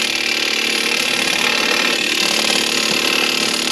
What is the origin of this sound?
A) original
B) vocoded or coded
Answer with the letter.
A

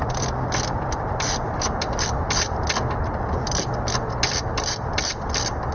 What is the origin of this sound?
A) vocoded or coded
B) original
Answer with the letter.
A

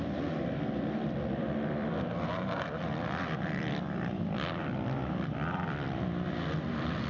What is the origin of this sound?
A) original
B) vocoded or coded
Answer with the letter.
B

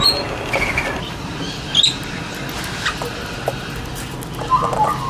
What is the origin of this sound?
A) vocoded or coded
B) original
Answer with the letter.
B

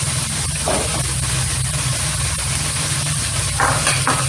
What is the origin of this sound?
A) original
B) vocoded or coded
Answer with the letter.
A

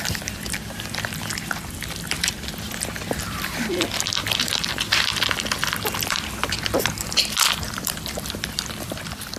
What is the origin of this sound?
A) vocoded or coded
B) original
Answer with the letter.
A